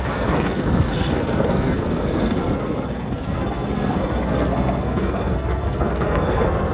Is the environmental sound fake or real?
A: fake